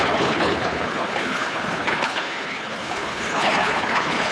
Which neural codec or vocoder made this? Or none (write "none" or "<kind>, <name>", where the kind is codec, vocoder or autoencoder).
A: codec, HILCodec